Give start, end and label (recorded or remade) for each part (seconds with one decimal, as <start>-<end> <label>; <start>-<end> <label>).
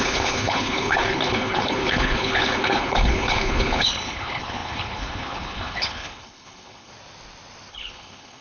0.0-6.9 remade; 6.9-7.7 recorded; 7.7-8.4 remade